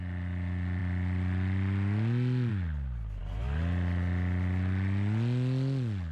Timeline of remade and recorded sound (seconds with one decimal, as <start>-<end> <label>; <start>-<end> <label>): 0.0-6.1 recorded